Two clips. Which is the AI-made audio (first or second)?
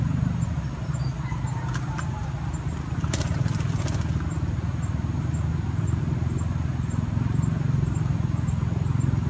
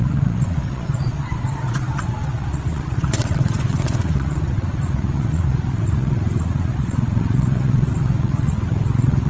second